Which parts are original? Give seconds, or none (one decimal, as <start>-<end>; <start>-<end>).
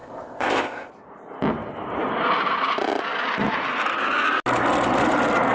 0.9-5.5